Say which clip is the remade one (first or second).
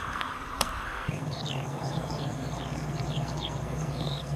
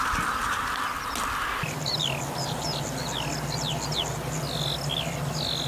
first